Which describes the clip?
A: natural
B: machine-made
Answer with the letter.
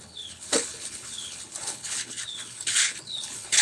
B